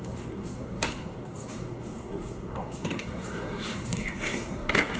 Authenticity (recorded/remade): remade